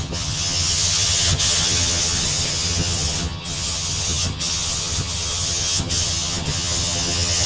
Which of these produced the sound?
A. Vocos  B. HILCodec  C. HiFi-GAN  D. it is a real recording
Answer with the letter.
C